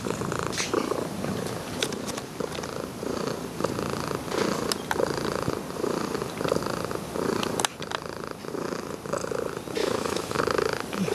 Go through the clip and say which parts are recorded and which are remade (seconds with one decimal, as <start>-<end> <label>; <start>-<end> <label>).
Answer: 0.0-9.8 recorded; 9.8-10.4 remade; 10.4-11.1 recorded